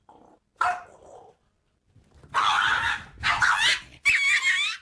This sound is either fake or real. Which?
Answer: real